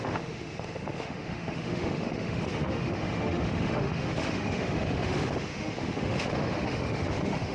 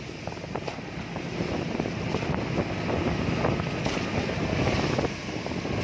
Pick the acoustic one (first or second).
second